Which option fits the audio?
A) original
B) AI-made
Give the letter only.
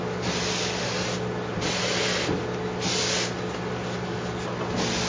A